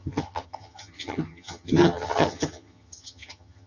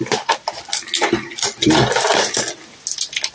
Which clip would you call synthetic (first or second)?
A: first